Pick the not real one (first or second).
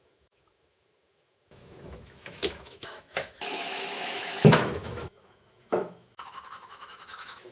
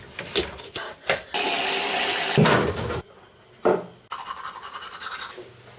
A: first